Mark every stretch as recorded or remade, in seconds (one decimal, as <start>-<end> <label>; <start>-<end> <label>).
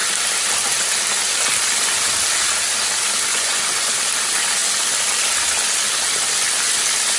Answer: 0.0-3.3 recorded; 3.3-3.9 remade; 3.9-7.2 recorded